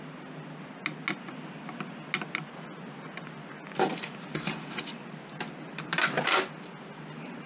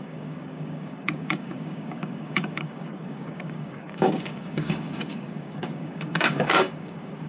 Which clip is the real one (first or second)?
first